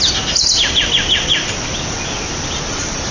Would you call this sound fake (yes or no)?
no